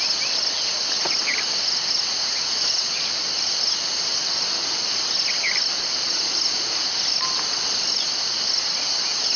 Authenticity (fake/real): real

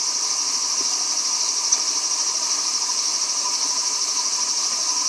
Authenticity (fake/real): real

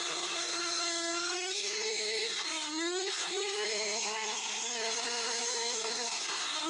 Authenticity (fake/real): fake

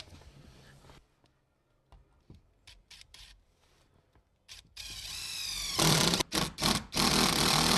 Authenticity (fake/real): fake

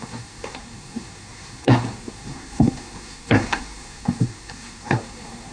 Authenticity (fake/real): fake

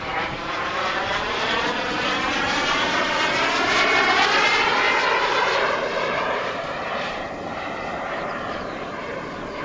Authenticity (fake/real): fake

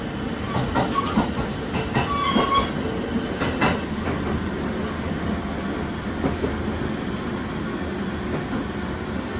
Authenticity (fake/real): real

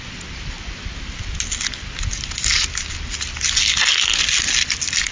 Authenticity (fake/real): real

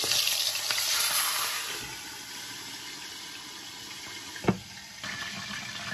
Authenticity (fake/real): real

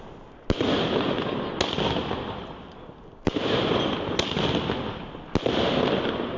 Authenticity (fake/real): real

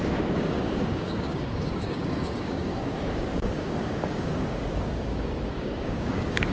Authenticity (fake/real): fake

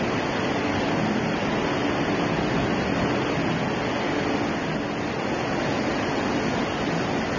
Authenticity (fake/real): real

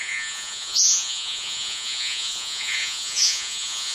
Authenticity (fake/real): fake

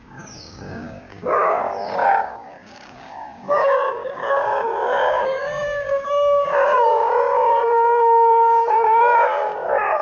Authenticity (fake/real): fake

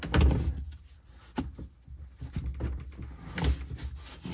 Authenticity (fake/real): real